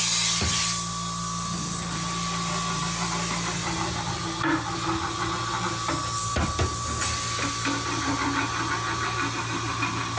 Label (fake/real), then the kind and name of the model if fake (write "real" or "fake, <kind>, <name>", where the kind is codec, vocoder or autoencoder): real